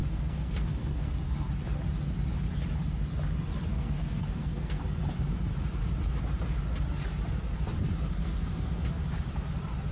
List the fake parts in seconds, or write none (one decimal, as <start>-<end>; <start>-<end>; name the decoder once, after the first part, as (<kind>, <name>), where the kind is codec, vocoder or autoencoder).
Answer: 0.0-1.1 (codec, SNAC); 3.7-4.8; 8.2-8.9